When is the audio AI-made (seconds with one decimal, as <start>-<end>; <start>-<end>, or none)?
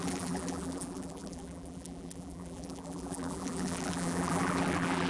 0.0-5.1